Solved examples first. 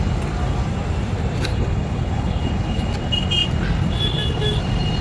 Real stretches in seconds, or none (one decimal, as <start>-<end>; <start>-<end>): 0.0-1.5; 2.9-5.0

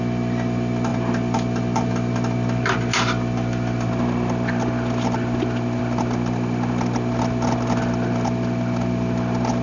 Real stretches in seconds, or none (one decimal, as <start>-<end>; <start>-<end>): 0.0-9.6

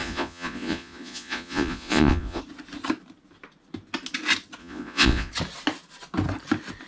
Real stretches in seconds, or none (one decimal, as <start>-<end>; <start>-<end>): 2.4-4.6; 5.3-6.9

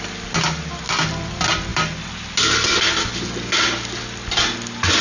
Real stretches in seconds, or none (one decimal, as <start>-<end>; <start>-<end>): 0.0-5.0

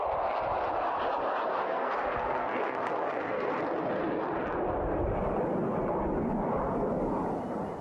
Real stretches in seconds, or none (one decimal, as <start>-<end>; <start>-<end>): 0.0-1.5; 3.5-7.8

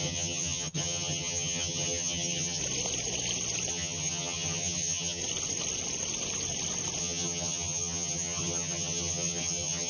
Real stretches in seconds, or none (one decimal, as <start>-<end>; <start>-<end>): 2.6-3.7; 5.2-7.0

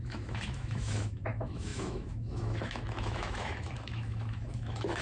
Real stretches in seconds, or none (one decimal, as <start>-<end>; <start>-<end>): none